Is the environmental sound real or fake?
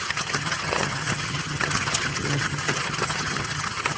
fake